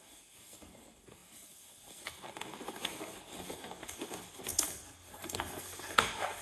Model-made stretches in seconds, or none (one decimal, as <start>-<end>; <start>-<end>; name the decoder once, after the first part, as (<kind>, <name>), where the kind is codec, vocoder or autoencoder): 0.0-6.4 (codec, SNAC)